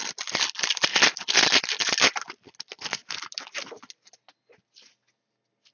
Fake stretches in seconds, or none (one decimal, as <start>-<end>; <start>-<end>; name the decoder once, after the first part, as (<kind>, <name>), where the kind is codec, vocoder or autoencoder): none